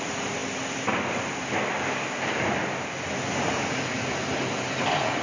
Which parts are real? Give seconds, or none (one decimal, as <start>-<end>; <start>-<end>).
0.0-5.2